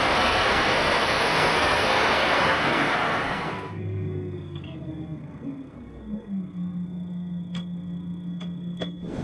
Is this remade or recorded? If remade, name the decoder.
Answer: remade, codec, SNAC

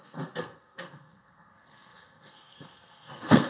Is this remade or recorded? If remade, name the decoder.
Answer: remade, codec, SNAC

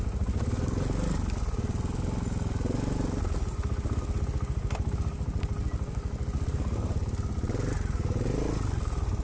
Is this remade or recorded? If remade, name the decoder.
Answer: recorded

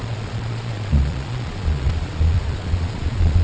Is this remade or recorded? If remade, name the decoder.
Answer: remade, vocoder, Vocos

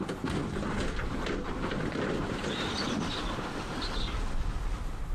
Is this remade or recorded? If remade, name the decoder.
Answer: recorded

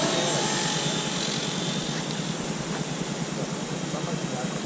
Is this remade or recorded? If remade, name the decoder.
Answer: recorded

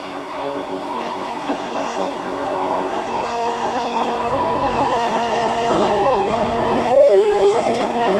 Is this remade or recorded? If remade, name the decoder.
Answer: remade, codec, SNAC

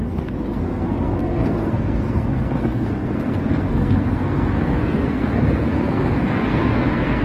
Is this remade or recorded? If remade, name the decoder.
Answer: remade, codec, SNAC